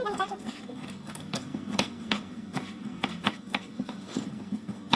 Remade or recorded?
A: remade